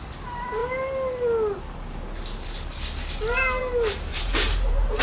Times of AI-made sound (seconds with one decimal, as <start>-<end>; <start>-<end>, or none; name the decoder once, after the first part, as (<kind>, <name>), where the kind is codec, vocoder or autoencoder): 4.1-5.0 (vocoder, BigVGAN v2)